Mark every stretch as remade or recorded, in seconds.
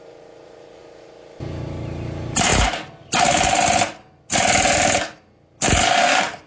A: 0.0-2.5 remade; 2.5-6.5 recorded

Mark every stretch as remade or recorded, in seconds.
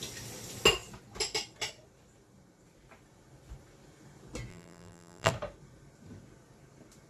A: 0.0-4.5 recorded; 4.5-5.3 remade; 5.3-7.1 recorded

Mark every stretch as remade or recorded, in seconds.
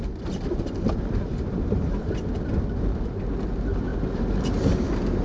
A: 0.0-3.1 remade; 3.1-3.9 recorded; 3.9-4.5 remade; 4.5-5.2 recorded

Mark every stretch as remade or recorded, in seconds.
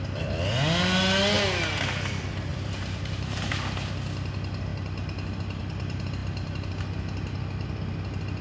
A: 0.0-2.5 recorded; 2.5-3.5 remade; 3.5-8.4 recorded